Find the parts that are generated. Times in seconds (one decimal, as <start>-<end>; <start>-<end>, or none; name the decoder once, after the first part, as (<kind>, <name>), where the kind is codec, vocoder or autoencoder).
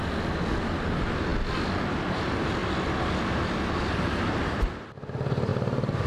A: none